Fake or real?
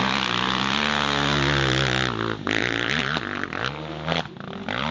real